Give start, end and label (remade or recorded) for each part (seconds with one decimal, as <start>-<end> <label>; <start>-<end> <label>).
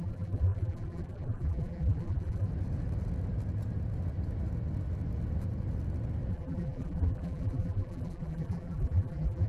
0.0-2.5 remade; 2.5-6.3 recorded; 6.3-9.5 remade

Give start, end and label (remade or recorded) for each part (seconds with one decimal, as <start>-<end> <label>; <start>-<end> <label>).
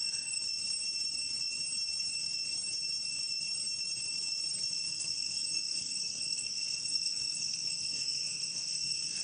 0.0-0.4 remade; 0.4-4.9 recorded; 4.9-9.2 remade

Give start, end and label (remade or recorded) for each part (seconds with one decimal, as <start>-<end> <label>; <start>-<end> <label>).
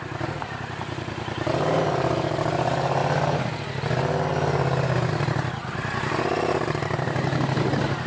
0.0-3.0 remade; 3.0-5.1 recorded; 5.1-8.1 remade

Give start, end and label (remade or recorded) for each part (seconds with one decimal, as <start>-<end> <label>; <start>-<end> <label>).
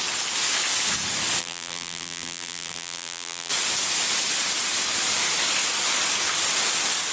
0.0-1.4 recorded; 1.4-3.5 remade; 3.5-7.1 recorded